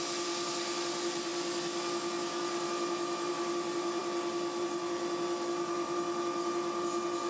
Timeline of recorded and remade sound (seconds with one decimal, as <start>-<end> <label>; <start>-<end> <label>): 0.0-1.3 remade; 1.3-3.3 recorded; 3.3-7.3 remade